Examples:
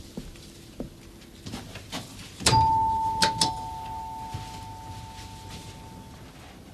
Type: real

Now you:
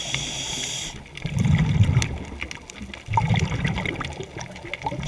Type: real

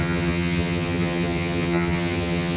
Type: fake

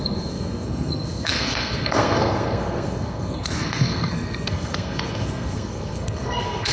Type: fake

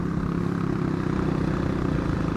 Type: real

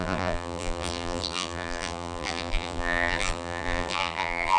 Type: fake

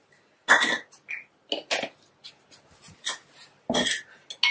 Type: real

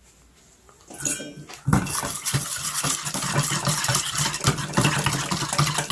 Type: real